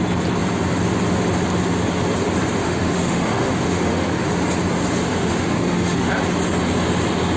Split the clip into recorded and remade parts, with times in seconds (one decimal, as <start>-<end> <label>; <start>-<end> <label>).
0.0-2.6 recorded; 2.6-4.3 remade; 4.3-5.1 recorded; 5.1-6.1 remade; 6.1-7.4 recorded